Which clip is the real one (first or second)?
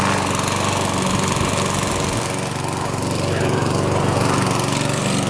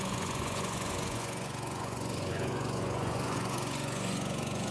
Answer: first